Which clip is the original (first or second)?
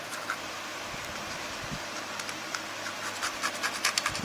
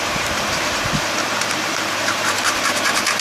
first